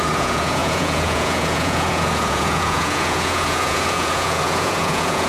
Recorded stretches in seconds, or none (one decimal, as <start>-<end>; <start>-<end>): none